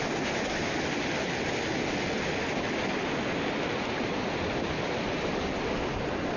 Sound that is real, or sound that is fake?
real